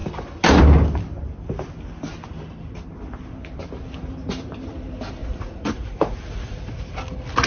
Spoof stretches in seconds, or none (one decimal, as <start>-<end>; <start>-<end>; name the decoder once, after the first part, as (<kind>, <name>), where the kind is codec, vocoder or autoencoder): 5.2-6.7 (vocoder, Vocos)